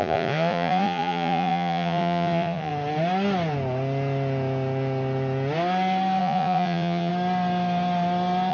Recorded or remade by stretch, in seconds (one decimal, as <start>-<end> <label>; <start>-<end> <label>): 0.0-2.7 remade; 2.7-6.2 recorded; 6.2-7.1 remade; 7.1-8.5 recorded